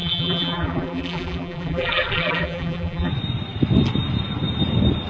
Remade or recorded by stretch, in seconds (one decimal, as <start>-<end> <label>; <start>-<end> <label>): 0.0-3.1 remade; 3.1-5.1 recorded